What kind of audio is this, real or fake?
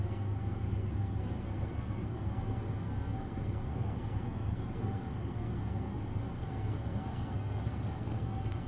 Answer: fake